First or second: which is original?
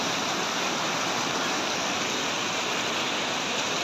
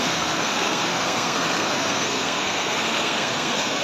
first